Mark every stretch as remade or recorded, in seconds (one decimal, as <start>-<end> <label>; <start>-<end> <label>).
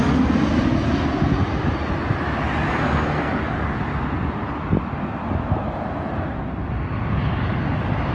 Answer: 0.0-2.7 recorded; 2.7-3.3 remade; 3.3-8.1 recorded